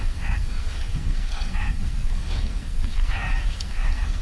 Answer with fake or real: fake